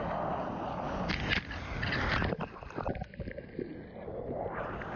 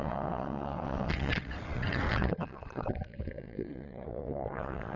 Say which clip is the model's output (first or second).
second